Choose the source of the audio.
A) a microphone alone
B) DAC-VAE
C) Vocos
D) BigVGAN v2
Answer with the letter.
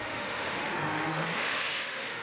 B